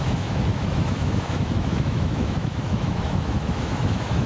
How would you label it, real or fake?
fake